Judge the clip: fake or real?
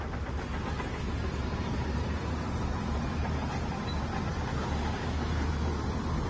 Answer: real